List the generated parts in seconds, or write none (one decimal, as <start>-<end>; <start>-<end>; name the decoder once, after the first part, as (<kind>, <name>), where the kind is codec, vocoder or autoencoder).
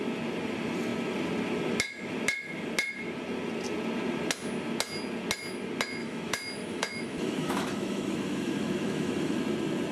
6.0-9.4 (autoencoder, DAC-VAE)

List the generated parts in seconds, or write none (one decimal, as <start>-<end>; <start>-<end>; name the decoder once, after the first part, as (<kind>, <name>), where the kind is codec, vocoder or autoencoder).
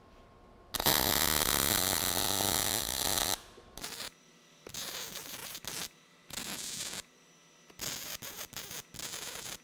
1.4-4.0 (vocoder, BigVGAN v2)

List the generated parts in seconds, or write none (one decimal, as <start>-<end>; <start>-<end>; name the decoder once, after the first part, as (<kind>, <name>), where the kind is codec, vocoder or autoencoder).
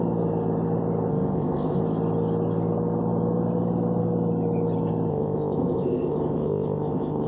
1.1-1.8 (codec, ZipCodec); 5.1-7.3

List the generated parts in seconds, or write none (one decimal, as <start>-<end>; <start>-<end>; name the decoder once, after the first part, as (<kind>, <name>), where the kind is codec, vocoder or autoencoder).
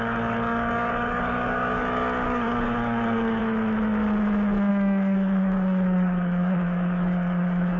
0.0-3.4 (codec, DAC); 4.7-7.8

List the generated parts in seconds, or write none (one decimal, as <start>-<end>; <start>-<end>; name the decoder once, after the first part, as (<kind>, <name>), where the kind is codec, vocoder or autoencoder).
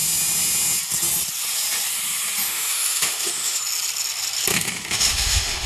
2.4-3.6 (autoencoder, DAC-VAE); 4.5-5.7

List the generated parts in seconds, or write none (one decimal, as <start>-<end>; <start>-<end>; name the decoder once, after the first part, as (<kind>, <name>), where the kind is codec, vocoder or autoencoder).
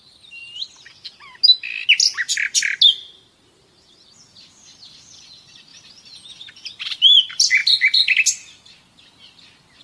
0.0-0.4 (vocoder, BigVGAN v2); 4.4-7.6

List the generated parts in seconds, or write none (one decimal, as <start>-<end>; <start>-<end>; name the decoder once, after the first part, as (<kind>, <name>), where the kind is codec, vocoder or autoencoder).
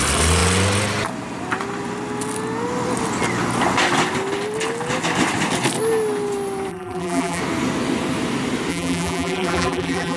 6.7-7.4 (vocoder, BigVGAN v2); 8.7-10.2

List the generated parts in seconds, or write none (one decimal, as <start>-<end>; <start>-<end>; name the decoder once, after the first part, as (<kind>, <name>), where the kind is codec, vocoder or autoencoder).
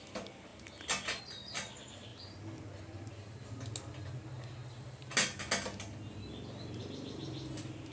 none